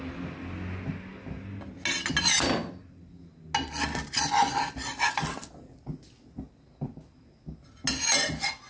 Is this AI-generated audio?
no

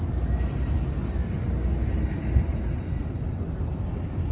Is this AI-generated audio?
no